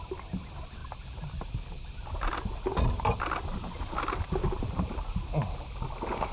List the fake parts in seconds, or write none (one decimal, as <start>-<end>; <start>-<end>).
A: none